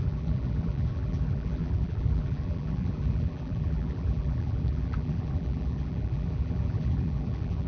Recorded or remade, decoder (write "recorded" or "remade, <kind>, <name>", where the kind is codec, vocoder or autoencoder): remade, vocoder, BigVGAN v2